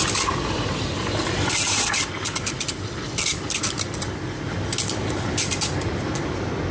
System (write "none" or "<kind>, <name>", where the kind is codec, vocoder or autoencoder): none